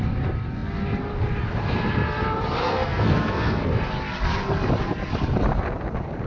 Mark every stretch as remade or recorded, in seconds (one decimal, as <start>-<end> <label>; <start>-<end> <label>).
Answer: 0.0-2.6 recorded; 2.6-3.9 remade; 3.9-6.3 recorded